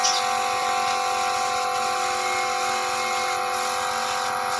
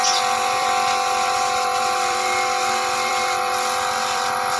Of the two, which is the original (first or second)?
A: first